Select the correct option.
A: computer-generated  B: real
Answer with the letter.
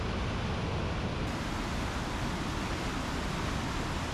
B